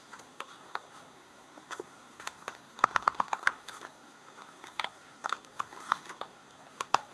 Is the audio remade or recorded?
remade